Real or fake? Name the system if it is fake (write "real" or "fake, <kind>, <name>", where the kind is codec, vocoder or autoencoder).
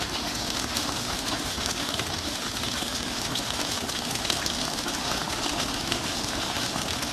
fake, autoencoder, DAC-VAE